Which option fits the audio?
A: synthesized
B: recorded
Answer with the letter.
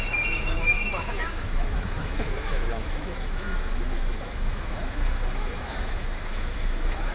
A